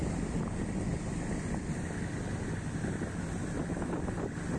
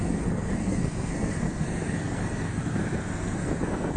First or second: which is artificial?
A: second